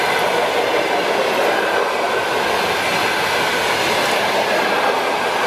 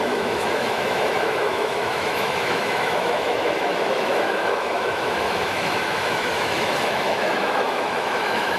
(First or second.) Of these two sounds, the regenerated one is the second